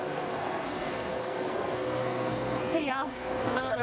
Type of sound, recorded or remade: remade